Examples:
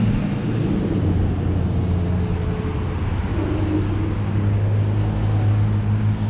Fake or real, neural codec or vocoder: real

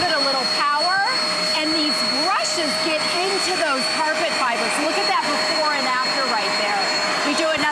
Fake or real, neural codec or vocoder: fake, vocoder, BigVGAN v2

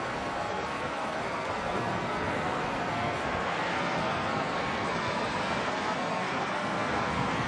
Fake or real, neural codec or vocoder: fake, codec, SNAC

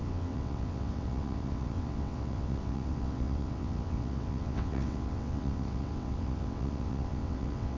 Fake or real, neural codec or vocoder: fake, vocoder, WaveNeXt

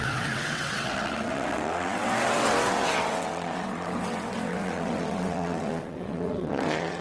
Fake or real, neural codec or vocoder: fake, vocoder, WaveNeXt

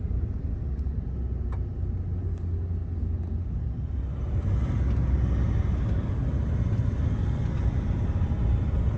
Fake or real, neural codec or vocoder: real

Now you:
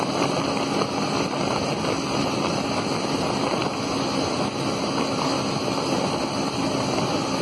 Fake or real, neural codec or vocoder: real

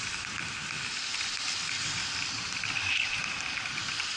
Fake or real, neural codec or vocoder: real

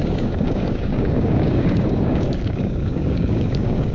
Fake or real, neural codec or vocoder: fake, codec, DAC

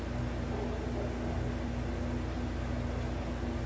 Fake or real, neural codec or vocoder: real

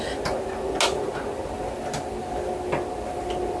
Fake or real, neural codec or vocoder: real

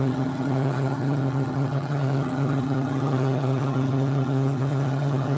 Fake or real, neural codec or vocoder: fake, vocoder, HiFi-GAN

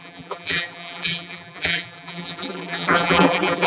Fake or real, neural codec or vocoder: fake, vocoder, BigVGAN v2